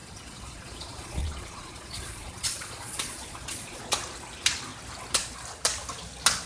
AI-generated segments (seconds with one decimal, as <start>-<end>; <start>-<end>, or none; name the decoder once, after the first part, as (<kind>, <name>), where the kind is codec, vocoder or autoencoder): 0.0-3.8 (vocoder, Vocos)

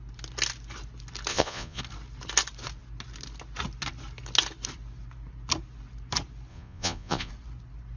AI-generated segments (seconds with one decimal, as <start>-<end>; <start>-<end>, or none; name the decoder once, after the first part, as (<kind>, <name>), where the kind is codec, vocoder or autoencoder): 1.3-1.8 (vocoder, Vocos); 6.5-7.3

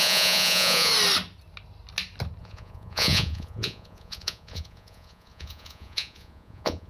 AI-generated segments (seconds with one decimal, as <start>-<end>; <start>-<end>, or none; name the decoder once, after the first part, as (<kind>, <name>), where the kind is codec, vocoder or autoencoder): 0.0-0.9 (vocoder, Vocos); 2.4-6.9